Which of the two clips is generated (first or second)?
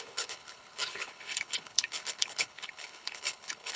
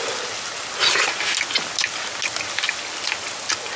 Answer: first